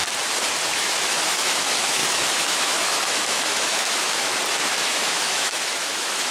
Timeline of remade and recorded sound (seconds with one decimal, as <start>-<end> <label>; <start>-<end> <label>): 0.0-0.7 recorded; 0.7-4.3 remade; 4.3-4.8 recorded; 4.8-6.3 remade